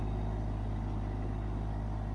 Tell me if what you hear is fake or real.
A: real